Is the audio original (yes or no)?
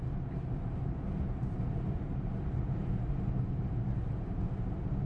yes